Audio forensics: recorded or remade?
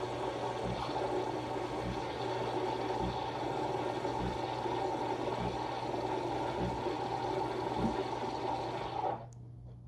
recorded